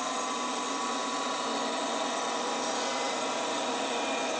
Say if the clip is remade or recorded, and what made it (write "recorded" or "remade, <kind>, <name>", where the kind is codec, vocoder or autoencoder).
recorded